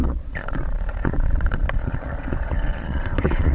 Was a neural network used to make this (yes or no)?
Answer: yes